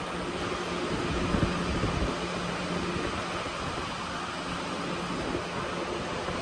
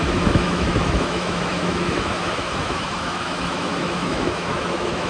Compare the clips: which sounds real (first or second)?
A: first